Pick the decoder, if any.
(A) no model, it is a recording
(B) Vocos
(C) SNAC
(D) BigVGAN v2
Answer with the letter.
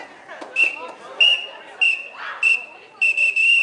A